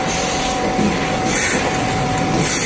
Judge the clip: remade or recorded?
recorded